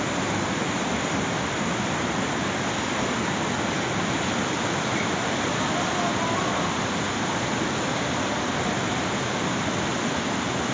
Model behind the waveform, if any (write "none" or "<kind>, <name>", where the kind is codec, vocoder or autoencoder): none